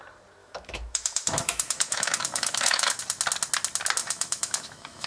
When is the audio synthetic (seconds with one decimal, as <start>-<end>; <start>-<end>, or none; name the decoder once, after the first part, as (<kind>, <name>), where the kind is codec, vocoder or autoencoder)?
0.4-3.0 (autoencoder, DAC-VAE); 4.0-5.1

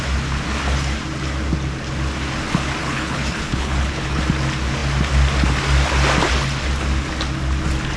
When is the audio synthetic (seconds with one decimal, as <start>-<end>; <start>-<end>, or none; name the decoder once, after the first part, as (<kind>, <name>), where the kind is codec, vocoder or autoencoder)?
2.8-4.2 (codec, HILCodec)

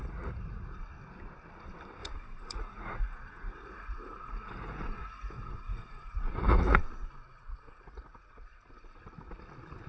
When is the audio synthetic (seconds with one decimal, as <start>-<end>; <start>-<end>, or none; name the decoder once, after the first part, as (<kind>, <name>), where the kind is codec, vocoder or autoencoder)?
0.0-0.8 (vocoder, Vocos); 2.0-6.8; 7.2-9.0

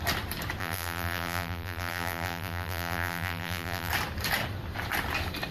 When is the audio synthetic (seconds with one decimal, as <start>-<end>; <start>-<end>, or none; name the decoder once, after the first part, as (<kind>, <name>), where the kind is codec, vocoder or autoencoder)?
0.6-3.9 (vocoder, BigVGAN v2)

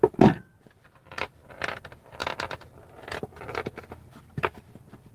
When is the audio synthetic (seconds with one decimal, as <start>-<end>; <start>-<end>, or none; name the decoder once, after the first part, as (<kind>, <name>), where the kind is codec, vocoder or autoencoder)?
none

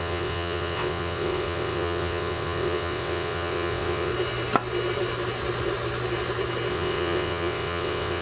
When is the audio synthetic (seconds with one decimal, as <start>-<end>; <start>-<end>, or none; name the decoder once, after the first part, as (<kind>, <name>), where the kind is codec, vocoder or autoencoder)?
0.0-4.1 (vocoder, WaveNeXt); 6.7-8.2